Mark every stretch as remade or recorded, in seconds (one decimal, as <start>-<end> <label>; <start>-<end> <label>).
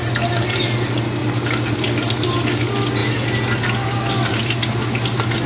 0.0-5.5 recorded